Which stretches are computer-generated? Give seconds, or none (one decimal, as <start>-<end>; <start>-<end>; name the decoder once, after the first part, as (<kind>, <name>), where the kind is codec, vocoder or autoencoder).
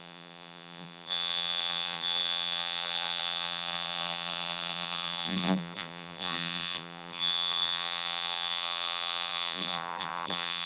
0.0-10.7 (vocoder, BigVGAN v2)